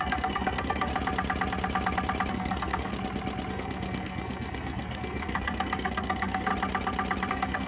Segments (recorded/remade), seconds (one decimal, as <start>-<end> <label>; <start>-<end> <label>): 0.0-0.9 remade; 0.9-2.3 recorded; 2.3-2.9 remade; 2.9-3.5 recorded; 3.5-6.5 remade; 6.5-7.3 recorded; 7.3-7.7 remade